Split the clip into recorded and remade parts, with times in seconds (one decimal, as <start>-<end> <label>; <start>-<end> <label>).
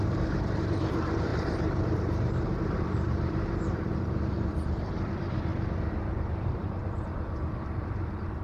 0.0-5.5 remade; 5.5-6.1 recorded; 6.1-8.4 remade